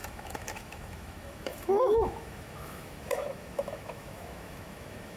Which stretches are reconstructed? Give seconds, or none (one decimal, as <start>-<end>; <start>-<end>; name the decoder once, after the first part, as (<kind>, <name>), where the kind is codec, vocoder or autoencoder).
0.0-5.2 (autoencoder, DAC-VAE)